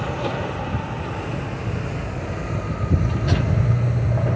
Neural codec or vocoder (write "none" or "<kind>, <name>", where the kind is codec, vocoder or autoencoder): none